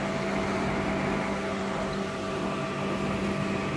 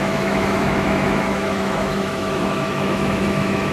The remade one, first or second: second